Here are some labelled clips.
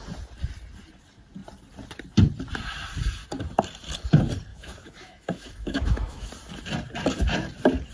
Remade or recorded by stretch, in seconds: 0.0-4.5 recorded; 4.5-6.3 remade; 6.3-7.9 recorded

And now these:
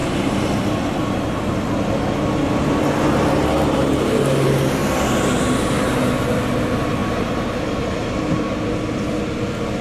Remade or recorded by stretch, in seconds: 0.0-4.8 recorded; 4.8-6.0 remade; 6.0-7.0 recorded; 7.0-9.3 remade; 9.3-9.8 recorded

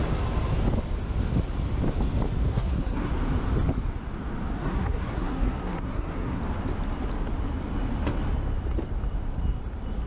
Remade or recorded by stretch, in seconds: 0.0-2.5 recorded; 2.5-3.1 remade; 3.1-4.6 recorded; 4.6-6.4 remade; 6.4-10.1 recorded

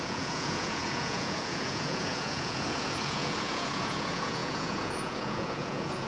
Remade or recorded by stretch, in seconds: 0.0-6.1 remade

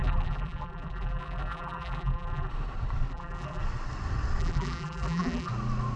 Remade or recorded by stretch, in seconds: 0.0-2.5 remade; 2.5-3.1 recorded; 3.1-3.6 remade; 3.6-4.4 recorded; 4.4-5.5 remade; 5.5-6.0 recorded

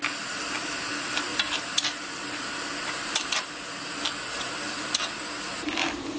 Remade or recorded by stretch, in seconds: 0.0-1.3 recorded; 1.3-3.5 remade; 3.5-4.3 recorded; 4.3-5.1 remade; 5.1-5.5 recorded; 5.5-6.2 remade